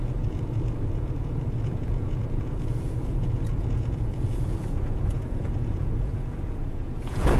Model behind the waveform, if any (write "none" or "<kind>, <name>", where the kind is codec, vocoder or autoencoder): vocoder, Vocos